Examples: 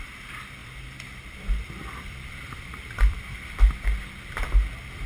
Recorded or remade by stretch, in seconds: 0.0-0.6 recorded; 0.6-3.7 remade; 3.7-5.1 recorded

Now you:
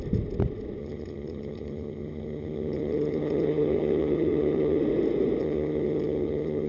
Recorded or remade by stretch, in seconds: 0.0-0.8 recorded; 0.8-4.8 remade; 4.8-5.4 recorded; 5.4-6.7 remade

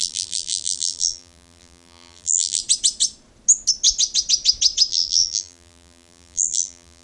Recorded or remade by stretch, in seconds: 0.0-2.6 remade; 2.6-4.9 recorded; 4.9-7.0 remade

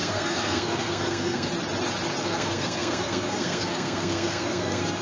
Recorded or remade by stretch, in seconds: 0.0-1.5 remade; 1.5-2.2 recorded; 2.2-5.0 remade

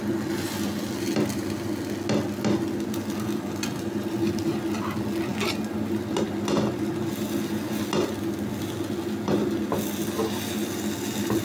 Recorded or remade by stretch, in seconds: 0.0-11.4 recorded